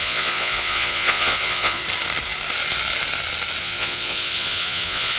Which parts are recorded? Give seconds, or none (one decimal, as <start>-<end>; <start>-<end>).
1.8-3.6